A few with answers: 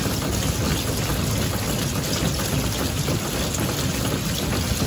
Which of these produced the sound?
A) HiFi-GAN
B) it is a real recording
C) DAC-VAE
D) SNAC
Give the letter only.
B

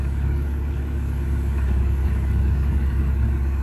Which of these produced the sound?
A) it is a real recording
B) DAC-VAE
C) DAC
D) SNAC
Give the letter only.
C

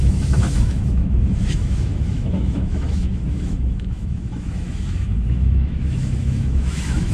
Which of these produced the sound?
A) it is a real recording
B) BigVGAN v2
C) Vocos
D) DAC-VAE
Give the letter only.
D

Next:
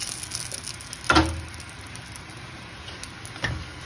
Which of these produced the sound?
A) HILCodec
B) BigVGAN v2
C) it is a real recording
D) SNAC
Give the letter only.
C